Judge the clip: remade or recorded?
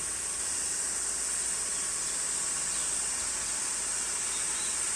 remade